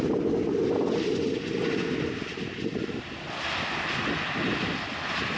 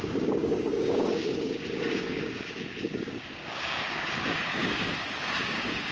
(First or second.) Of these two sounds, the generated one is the second